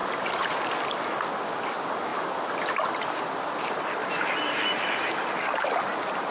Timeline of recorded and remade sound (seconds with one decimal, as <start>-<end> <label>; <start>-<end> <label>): 0.0-6.3 recorded